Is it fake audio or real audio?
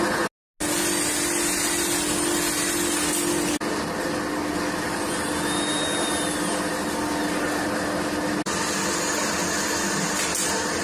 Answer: real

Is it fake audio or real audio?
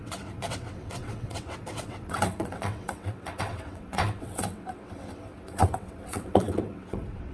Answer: fake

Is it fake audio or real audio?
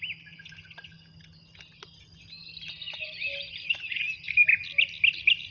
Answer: real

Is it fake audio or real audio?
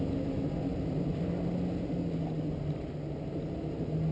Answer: real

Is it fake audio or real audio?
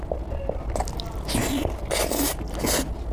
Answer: real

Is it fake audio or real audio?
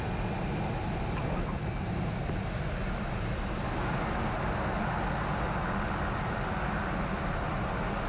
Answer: real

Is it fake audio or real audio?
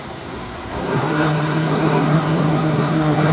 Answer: fake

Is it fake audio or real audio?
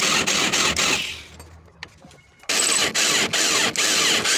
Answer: real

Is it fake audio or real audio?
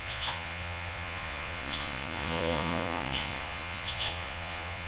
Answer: fake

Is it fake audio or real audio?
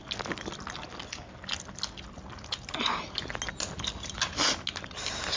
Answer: real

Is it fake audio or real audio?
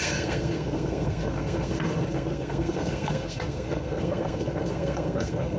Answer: fake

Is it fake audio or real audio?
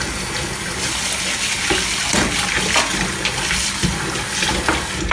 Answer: real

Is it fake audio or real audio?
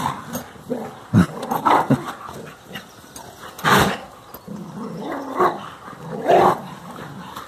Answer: real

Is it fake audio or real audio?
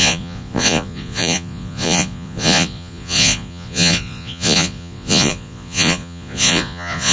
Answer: fake